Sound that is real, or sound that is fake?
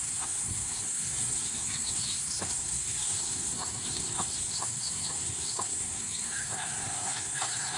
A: fake